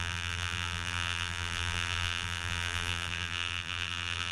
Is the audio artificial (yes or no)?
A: yes